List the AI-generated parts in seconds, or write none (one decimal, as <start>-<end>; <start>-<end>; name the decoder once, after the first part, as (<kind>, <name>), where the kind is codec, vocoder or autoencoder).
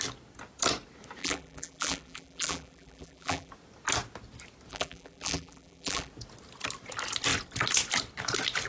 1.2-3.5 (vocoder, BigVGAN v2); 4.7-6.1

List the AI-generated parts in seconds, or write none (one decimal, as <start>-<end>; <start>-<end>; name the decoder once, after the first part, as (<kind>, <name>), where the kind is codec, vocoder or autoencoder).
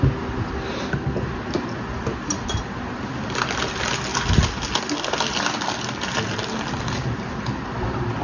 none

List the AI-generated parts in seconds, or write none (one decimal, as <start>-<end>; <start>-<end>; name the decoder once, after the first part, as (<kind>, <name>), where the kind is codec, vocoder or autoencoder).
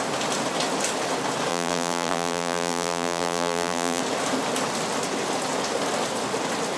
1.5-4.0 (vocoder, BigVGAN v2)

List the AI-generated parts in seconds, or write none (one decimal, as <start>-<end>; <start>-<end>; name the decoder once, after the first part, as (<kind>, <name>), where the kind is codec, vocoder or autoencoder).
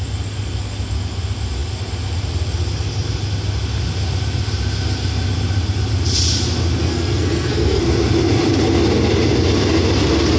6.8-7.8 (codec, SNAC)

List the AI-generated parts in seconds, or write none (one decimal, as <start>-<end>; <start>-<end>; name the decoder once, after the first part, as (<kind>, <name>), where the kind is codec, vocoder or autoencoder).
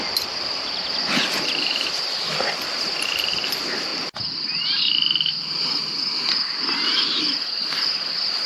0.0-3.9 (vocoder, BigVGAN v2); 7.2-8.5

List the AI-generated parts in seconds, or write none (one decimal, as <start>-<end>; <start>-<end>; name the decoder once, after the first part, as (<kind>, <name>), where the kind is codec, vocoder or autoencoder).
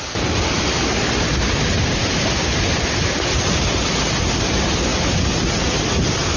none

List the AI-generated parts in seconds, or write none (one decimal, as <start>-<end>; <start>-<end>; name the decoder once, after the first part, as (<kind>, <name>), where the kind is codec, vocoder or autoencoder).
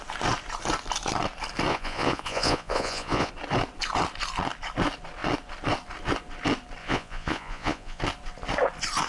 1.7-3.3 (vocoder, Vocos); 6.8-8.0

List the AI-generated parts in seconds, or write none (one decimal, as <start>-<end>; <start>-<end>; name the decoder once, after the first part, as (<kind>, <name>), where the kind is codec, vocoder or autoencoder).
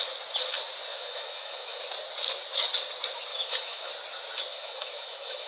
0.9-1.8 (autoencoder, DAC-VAE); 3.3-3.9; 4.5-5.5